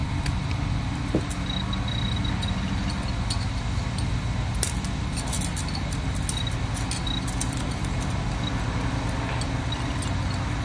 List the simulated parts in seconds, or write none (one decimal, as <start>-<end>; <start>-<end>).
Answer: none

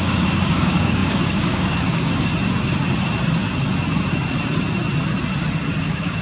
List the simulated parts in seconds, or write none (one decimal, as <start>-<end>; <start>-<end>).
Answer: 0.0-2.3; 5.8-6.2

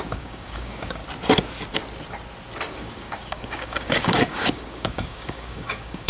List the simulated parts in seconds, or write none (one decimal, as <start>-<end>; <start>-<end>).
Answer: 0.0-1.0; 2.8-6.1

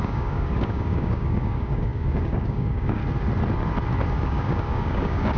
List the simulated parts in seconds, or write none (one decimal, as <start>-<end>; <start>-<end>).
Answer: 0.0-3.0; 4.1-5.4

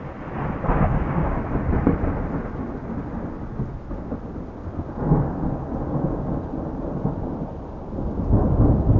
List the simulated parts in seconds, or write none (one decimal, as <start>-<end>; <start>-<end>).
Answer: 0.9-1.4

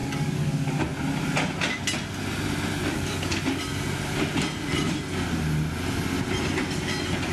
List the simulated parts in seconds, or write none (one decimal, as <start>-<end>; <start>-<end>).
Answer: 0.0-0.8; 2.9-3.4